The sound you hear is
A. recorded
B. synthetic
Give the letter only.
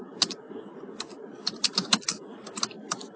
A